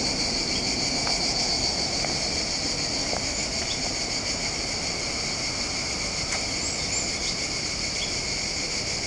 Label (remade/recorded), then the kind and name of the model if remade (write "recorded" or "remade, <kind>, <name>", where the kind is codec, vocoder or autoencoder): recorded